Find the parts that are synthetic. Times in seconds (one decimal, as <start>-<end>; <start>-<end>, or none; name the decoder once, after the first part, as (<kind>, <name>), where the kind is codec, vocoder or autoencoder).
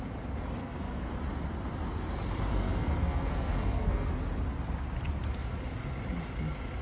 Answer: 0.6-1.1 (codec, SNAC); 2.5-4.1